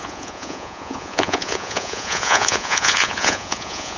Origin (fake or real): fake